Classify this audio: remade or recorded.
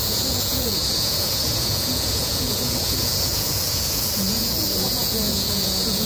remade